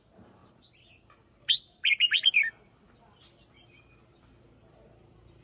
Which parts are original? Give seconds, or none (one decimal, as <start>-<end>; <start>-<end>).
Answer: 0.0-5.4